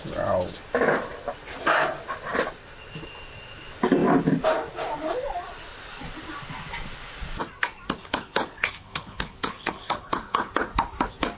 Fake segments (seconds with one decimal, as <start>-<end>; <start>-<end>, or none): 8.0-10.5